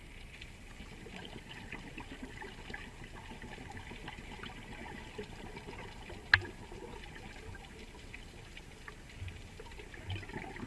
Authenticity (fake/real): real